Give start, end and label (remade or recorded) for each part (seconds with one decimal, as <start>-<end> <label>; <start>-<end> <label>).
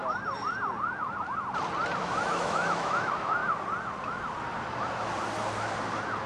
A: 0.0-2.0 recorded; 2.0-3.4 remade; 3.4-6.3 recorded